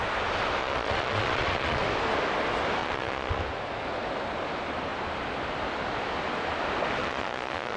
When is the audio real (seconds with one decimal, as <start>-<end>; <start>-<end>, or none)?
0.0-0.6; 1.8-2.8; 3.4-7.0